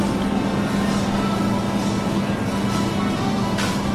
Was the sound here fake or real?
real